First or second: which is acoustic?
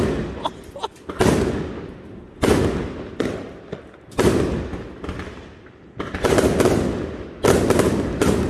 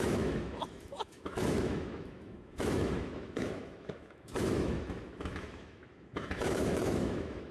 first